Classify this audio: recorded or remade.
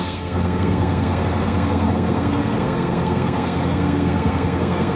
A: remade